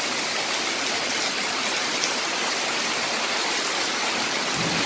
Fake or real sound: real